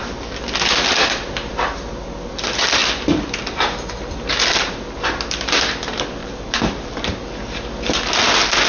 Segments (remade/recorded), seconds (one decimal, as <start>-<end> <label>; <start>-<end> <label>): 0.0-6.2 recorded; 6.2-6.9 remade; 6.9-8.7 recorded